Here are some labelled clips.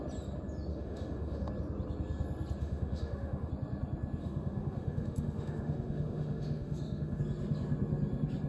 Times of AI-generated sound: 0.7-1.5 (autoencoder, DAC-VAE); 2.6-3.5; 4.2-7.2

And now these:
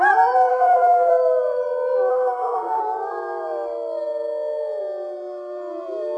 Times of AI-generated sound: 0.5-1.1 (autoencoder, DAC-VAE); 2.1-2.8

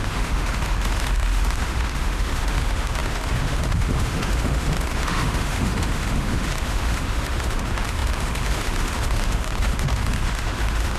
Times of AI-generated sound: 0.0-11.0 (autoencoder, DAC-VAE)

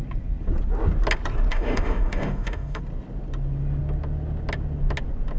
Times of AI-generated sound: 1.5-2.8 (autoencoder, DAC-VAE)

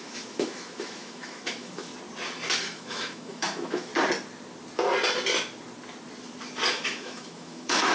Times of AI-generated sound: 0.0-1.9 (autoencoder, DAC-VAE); 2.6-3.9; 6.7-7.9

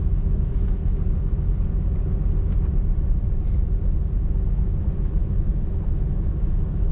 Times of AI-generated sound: 0.0-0.8 (autoencoder, DAC-VAE); 4.5-6.9